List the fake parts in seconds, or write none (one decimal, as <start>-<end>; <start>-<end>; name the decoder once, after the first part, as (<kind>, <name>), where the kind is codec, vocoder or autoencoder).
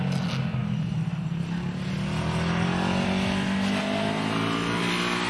none